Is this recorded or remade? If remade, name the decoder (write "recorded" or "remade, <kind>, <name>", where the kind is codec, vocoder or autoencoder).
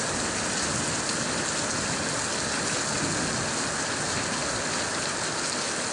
recorded